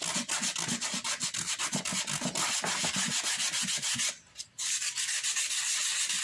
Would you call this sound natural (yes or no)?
yes